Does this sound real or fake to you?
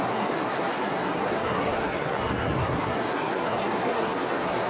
fake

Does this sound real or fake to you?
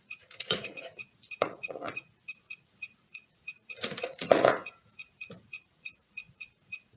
fake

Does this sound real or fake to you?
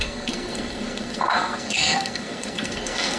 fake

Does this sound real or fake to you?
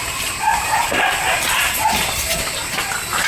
real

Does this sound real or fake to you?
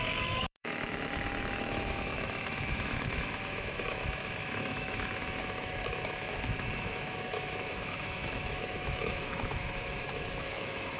fake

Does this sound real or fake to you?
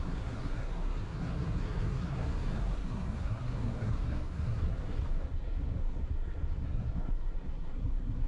fake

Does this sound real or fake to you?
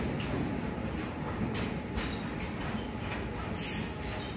real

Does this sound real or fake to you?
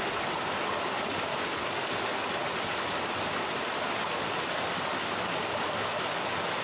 real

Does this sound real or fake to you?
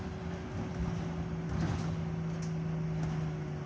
real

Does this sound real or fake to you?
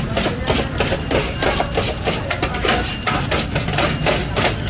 real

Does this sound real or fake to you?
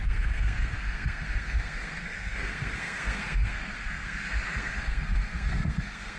fake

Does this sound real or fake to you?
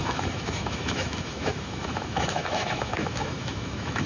fake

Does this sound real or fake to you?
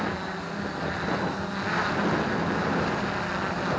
real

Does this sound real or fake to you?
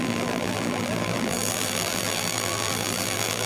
fake